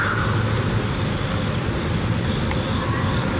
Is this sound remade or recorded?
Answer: recorded